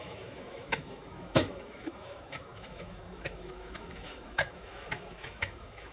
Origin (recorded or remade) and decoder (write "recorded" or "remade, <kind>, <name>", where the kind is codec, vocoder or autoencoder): remade, autoencoder, DAC-VAE